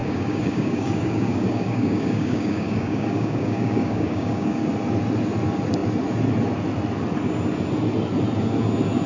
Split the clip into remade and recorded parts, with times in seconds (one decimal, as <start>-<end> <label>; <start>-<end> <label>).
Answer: 0.0-4.6 remade; 4.6-9.1 recorded